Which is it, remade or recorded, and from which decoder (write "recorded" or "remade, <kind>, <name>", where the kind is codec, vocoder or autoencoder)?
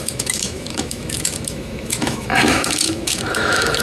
remade, autoencoder, DAC-VAE